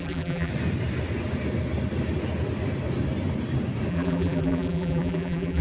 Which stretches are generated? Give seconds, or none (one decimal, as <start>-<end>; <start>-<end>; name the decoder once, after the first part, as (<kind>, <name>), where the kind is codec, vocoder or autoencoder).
0.0-0.5 (vocoder, BigVGAN v2); 3.9-5.6